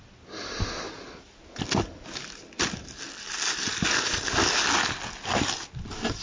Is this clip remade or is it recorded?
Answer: recorded